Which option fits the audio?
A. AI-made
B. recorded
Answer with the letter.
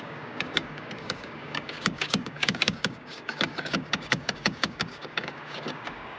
A